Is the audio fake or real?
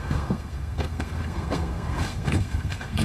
fake